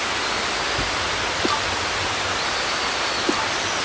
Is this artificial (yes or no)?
no